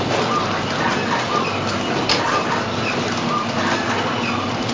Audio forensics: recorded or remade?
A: recorded